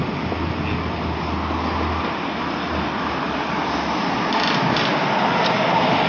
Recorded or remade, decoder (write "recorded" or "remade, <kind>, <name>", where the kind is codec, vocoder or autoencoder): recorded